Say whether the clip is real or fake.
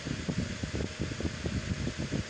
real